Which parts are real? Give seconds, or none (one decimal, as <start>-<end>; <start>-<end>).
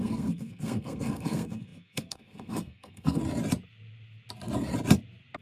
3.2-5.4